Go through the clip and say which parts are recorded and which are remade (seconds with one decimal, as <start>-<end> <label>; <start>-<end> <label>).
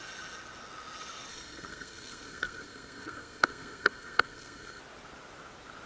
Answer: 0.0-1.3 recorded; 1.3-4.8 remade; 4.8-5.9 recorded